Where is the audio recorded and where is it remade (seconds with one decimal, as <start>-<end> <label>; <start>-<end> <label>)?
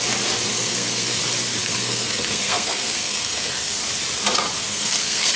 0.0-0.5 recorded; 0.5-1.2 remade; 1.2-1.6 recorded; 1.6-3.8 remade; 3.8-4.7 recorded; 4.7-5.4 remade